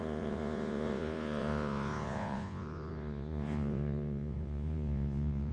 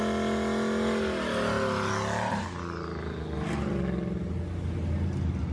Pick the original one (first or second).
second